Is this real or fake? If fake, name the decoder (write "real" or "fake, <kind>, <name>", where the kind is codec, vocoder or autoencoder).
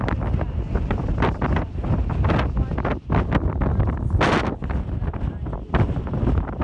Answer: real